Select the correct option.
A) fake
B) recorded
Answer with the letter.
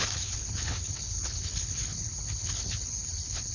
A